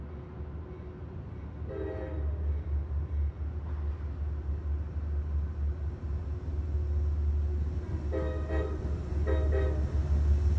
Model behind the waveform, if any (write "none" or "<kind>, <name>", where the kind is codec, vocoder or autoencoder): none